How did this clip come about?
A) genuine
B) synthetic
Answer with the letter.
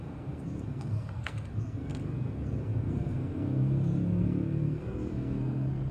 B